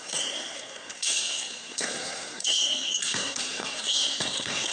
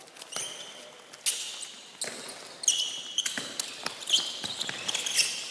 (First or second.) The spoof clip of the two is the first